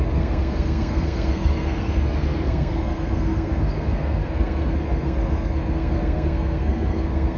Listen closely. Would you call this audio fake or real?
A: fake